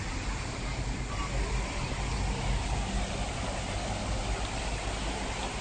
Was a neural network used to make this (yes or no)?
no